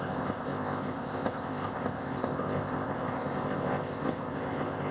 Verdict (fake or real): fake